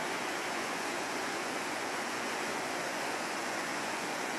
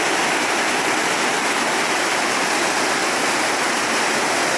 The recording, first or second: second